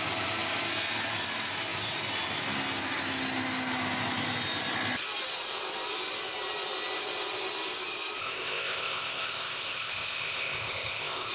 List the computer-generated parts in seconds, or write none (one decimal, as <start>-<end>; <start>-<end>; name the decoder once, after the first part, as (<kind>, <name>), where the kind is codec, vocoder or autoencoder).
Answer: 8.2-11.3 (codec, ZipCodec)